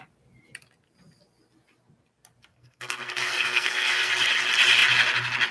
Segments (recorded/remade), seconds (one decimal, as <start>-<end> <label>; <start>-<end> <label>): 0.0-2.5 recorded; 2.5-4.1 remade; 4.1-5.5 recorded